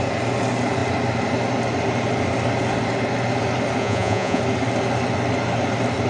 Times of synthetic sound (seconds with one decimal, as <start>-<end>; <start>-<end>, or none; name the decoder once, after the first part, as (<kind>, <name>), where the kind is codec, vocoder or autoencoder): 3.8-4.4 (vocoder, Vocos)